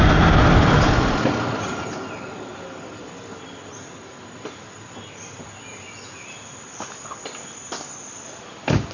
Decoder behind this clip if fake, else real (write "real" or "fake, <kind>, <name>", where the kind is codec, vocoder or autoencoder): real